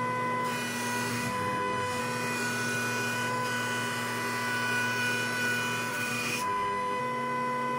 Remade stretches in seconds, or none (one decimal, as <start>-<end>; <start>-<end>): 1.1-2.0; 5.9-7.0